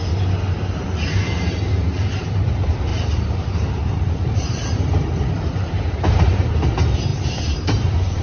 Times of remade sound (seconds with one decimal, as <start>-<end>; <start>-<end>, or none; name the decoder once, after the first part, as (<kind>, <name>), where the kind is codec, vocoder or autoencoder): 2.9-6.4 (vocoder, BigVGAN v2); 7.1-8.2